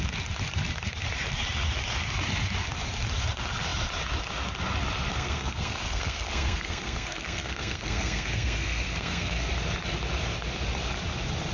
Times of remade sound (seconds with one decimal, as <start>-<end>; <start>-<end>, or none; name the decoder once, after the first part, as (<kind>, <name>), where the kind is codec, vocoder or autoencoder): 5.1-9.5 (codec, SNAC)